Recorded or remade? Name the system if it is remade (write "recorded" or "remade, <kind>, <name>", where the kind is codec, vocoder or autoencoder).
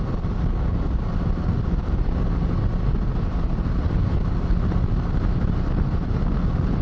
recorded